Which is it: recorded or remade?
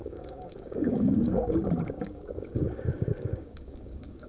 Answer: remade